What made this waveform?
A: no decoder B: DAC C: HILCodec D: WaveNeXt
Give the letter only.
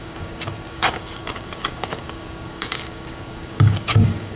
B